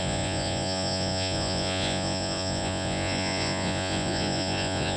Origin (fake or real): fake